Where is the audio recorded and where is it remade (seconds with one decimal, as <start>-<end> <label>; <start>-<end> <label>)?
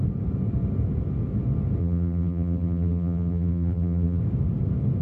0.0-1.8 recorded; 1.8-4.2 remade; 4.2-5.0 recorded